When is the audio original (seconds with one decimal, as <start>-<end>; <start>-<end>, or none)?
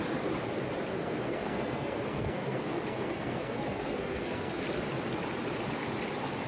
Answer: 0.0-0.9; 4.6-6.5